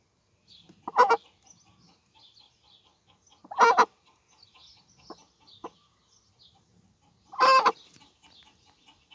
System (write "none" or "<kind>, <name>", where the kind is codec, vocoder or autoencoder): none